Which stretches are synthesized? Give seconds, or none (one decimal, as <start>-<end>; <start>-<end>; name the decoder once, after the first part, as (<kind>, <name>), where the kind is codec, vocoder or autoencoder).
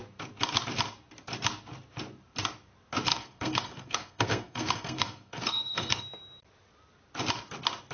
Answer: 3.1-6.0 (codec, SNAC)